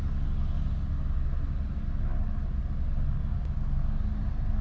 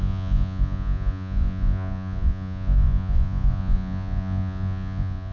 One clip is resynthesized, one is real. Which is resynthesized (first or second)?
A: second